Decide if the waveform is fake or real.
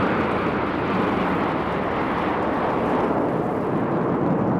real